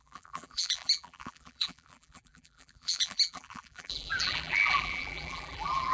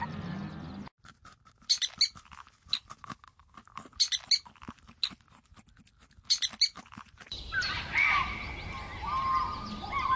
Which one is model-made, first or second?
first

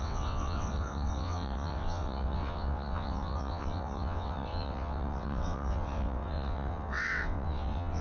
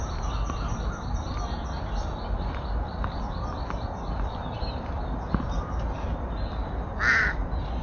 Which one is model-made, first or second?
first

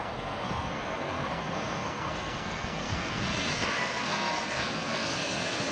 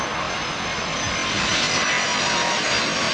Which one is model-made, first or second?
first